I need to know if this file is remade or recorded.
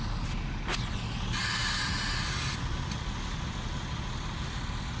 recorded